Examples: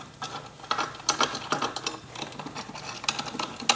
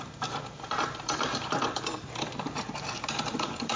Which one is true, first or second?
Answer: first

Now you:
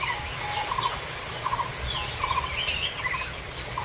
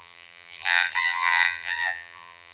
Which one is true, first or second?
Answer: first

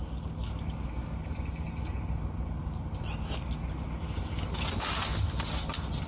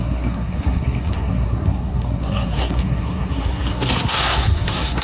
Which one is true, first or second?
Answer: first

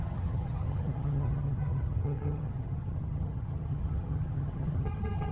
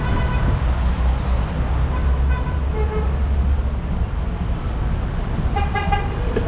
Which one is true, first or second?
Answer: second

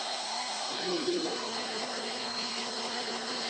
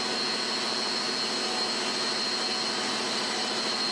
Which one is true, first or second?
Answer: second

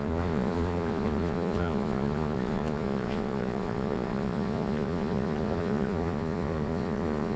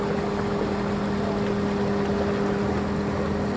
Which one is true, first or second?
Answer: second